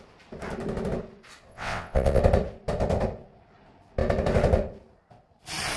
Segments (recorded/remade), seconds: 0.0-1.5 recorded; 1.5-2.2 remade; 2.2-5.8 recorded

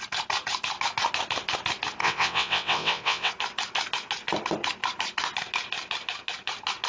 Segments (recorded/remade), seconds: 0.0-2.0 recorded; 2.0-3.3 remade; 3.3-6.9 recorded

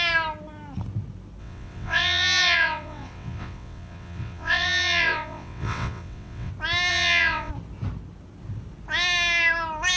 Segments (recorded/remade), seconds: 0.0-1.4 recorded; 1.4-6.5 remade; 6.5-6.9 recorded; 6.9-7.5 remade; 7.5-10.0 recorded